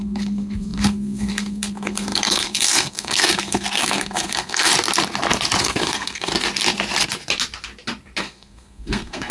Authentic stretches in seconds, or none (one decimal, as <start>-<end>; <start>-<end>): 4.7-5.6; 6.3-8.2